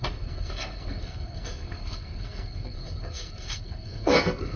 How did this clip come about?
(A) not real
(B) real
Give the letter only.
A